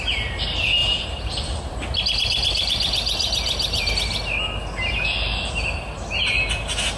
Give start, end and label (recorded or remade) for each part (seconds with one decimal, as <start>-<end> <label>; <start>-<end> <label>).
0.0-0.8 recorded; 0.8-3.9 remade; 3.9-7.0 recorded